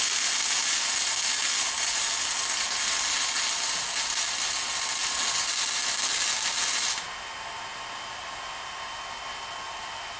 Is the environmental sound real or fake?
real